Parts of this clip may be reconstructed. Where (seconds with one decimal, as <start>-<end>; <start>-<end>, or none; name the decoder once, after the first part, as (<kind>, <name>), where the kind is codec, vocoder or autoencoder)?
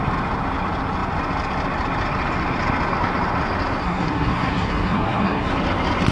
3.8-5.5 (codec, SNAC)